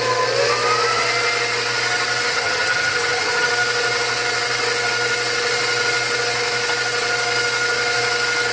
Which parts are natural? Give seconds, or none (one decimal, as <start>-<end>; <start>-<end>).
0.0-2.3; 3.5-8.5